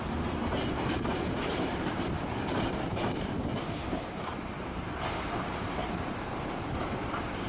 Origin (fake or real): fake